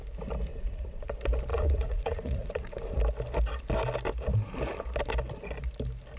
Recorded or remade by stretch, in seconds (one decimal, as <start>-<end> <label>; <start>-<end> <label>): 0.0-0.5 recorded; 0.5-1.1 remade; 1.1-1.5 recorded; 1.5-3.0 remade; 3.0-6.2 recorded